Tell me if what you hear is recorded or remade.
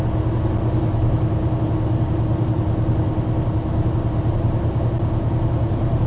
recorded